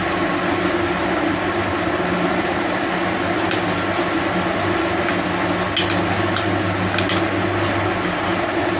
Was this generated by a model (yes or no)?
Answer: no